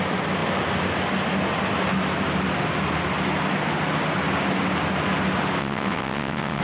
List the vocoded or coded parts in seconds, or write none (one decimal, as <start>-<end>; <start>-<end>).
5.6-6.6